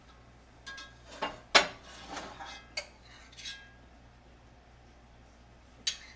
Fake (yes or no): no